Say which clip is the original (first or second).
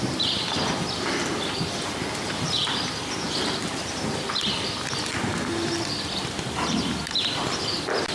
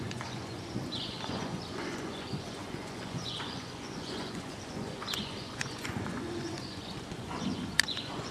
first